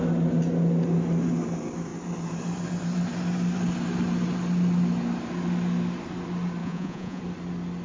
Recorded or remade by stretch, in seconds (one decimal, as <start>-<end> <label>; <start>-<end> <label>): 0.0-6.6 recorded; 6.6-7.2 remade; 7.2-7.8 recorded